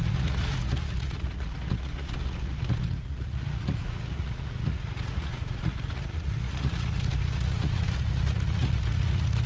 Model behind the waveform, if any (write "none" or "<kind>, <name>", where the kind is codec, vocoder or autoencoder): vocoder, Vocos